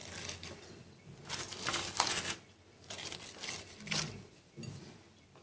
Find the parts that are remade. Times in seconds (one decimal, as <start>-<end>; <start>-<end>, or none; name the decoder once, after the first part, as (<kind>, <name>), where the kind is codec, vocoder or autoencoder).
none